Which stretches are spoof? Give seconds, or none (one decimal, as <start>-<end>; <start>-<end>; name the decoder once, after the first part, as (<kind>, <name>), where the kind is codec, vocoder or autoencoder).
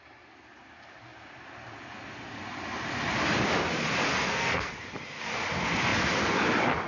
4.1-4.7 (codec, SNAC)